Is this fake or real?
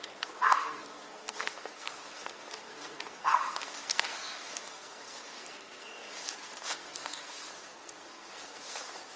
fake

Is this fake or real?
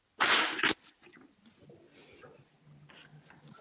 real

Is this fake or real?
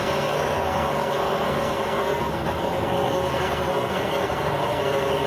fake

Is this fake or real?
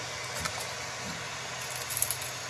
real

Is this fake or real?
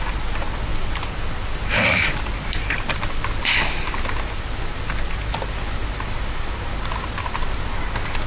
real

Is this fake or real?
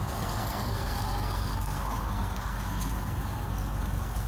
fake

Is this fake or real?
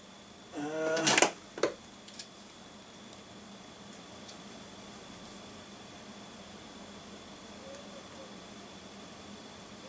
real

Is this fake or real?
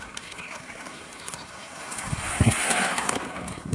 fake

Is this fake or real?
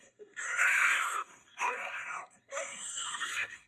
fake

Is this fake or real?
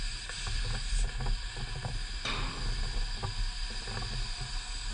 real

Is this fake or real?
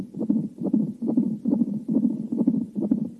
real